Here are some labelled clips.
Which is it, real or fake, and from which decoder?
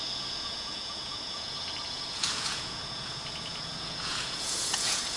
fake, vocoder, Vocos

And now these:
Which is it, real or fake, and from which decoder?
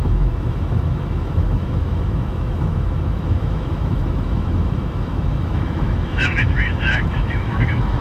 fake, autoencoder, DAC-VAE